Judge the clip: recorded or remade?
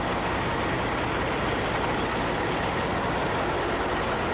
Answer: recorded